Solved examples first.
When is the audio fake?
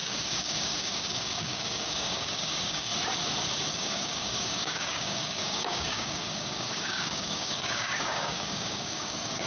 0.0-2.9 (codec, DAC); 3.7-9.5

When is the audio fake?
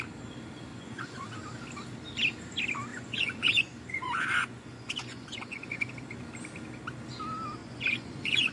0.7-1.4 (vocoder, Vocos); 2.9-5.9; 7.6-8.5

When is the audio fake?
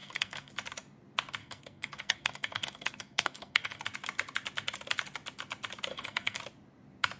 0.0-0.5 (codec, SNAC); 1.4-3.8; 5.9-6.4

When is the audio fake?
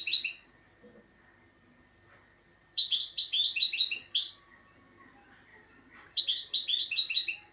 2.5-3.6 (vocoder, BigVGAN v2); 5.5-6.2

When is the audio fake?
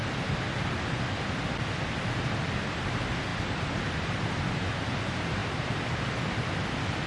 3.3-4.4 (vocoder, BigVGAN v2)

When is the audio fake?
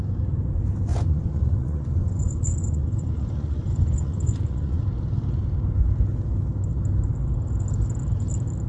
0.9-4.8 (vocoder, Vocos)